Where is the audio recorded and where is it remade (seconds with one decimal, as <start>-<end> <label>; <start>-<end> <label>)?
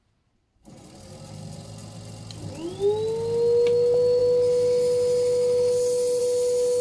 0.0-6.8 recorded